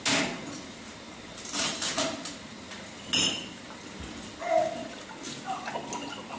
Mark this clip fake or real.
real